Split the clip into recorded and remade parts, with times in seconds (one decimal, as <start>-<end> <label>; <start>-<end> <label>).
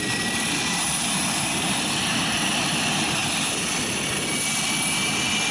0.0-5.5 recorded